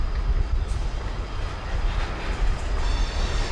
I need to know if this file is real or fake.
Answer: real